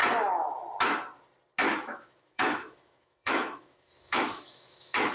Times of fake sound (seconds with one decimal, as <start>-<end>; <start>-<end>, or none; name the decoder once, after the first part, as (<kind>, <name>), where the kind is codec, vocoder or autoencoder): 1.7-5.1 (autoencoder, DAC-VAE)